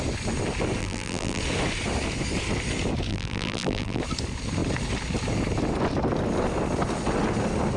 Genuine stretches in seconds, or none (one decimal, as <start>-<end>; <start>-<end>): 0.0-0.8; 1.4-3.1; 4.0-7.8